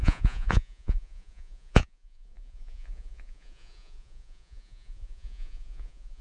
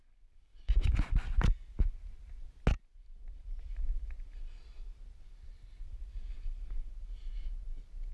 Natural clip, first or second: second